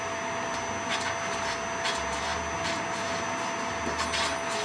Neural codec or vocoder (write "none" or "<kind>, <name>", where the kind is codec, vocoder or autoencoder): none